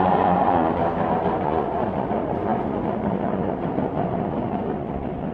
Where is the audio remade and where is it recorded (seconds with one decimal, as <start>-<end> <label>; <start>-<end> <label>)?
0.0-0.8 remade; 0.8-1.4 recorded; 1.4-5.3 remade

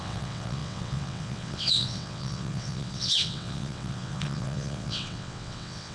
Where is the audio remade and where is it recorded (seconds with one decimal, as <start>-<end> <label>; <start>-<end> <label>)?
0.0-5.9 remade

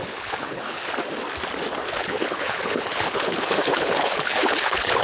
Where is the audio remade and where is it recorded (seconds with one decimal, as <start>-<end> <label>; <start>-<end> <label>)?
0.0-0.8 remade; 0.8-1.8 recorded; 1.8-5.0 remade

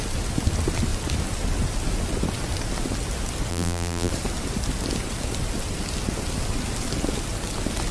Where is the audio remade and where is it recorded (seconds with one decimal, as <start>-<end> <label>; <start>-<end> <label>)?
0.0-3.5 recorded; 3.5-4.1 remade; 4.1-7.9 recorded

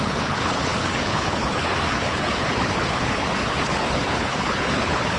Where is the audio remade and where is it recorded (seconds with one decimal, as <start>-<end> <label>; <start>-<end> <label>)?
0.0-5.2 remade

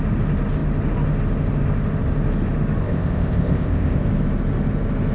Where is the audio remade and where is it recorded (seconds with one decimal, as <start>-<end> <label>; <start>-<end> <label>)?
0.0-2.8 recorded; 2.8-4.0 remade; 4.0-5.1 recorded

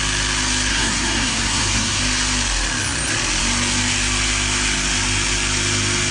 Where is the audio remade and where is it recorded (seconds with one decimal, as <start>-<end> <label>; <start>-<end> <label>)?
0.0-0.7 recorded; 0.7-2.0 remade; 2.0-6.1 recorded